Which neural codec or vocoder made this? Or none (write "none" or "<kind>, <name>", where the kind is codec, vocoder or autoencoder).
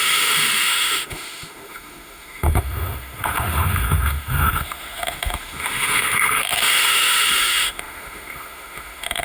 autoencoder, DAC-VAE